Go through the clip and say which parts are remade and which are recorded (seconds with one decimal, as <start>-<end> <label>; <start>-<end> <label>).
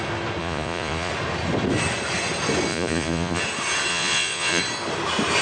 0.0-0.4 recorded; 0.4-1.1 remade; 1.1-2.7 recorded; 2.7-3.4 remade; 3.4-3.9 recorded; 3.9-4.6 remade; 4.6-5.4 recorded